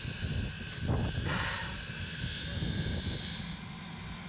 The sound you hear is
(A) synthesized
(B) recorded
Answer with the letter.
B